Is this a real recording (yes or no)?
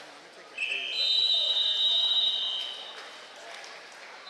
yes